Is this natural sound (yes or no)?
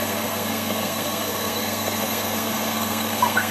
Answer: no